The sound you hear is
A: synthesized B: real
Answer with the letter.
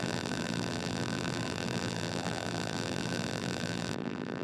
A